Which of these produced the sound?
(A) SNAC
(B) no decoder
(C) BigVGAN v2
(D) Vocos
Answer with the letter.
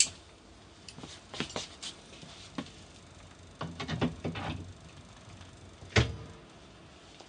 B